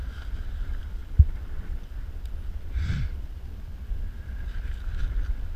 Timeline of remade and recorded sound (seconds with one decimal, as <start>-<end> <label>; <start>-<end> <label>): 0.0-5.6 recorded